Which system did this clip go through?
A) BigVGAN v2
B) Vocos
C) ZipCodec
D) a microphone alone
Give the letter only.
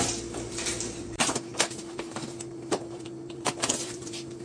A